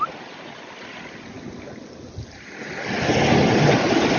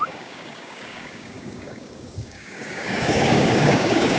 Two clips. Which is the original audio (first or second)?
first